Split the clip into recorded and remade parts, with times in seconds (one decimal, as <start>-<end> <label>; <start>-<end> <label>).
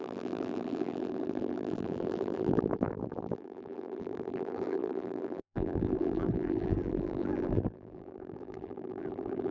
0.0-9.5 remade